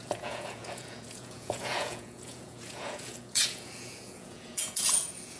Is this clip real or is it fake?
fake